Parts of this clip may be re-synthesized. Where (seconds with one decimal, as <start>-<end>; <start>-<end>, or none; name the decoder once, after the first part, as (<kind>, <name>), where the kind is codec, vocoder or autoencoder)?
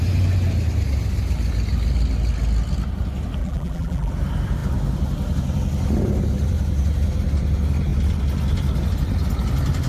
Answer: 3.4-4.1 (vocoder, BigVGAN v2)